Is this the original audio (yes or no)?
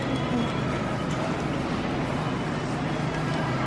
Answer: yes